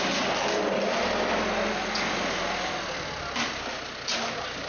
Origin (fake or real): real